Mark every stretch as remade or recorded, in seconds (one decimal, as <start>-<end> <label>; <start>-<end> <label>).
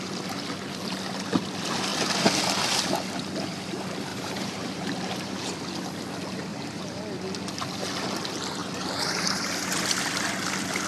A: 0.0-4.1 recorded; 4.1-5.4 remade; 5.4-6.5 recorded; 6.5-7.0 remade; 7.0-8.6 recorded; 8.6-10.1 remade; 10.1-10.9 recorded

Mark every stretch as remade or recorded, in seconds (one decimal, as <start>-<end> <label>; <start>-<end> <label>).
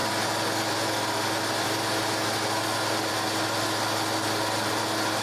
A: 0.0-5.2 recorded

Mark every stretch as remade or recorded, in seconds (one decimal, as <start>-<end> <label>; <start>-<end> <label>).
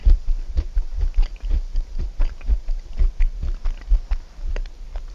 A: 0.0-3.1 remade; 3.1-5.1 recorded